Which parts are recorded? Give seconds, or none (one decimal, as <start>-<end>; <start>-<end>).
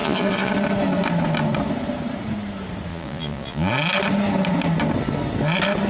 0.5-2.9; 3.7-5.9